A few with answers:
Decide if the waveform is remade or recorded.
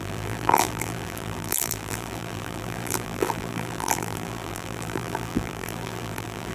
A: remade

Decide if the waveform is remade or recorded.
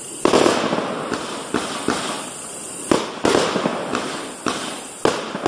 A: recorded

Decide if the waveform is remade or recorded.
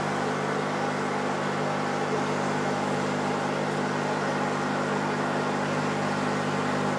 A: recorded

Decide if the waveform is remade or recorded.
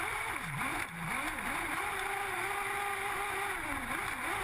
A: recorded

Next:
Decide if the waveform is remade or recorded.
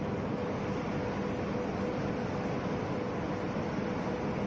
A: recorded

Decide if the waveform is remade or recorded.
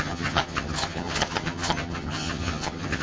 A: remade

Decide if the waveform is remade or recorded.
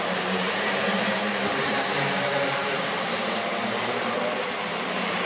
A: remade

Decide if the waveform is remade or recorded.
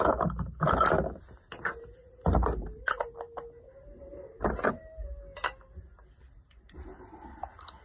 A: recorded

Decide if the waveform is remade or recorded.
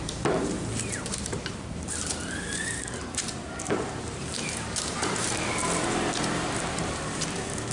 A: remade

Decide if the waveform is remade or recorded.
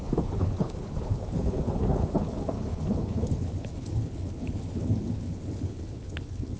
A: remade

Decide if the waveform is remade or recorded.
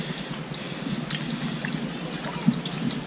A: recorded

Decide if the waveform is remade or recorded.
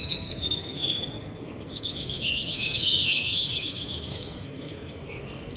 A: remade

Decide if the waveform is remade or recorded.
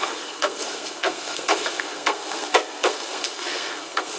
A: remade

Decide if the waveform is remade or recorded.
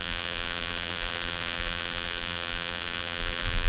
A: remade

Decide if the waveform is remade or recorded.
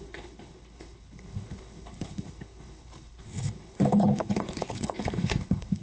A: remade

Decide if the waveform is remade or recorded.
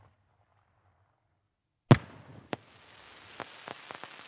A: recorded